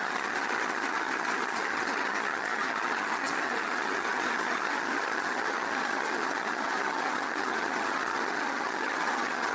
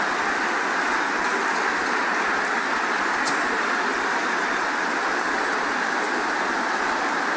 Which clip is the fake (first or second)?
first